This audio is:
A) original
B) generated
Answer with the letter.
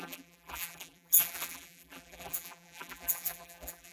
B